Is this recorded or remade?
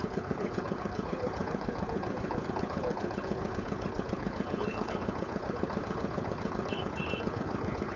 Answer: remade